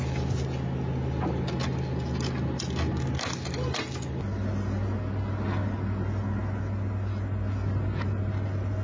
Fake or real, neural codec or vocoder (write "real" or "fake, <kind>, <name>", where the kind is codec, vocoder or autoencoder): real